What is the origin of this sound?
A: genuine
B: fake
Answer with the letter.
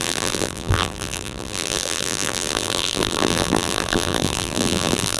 B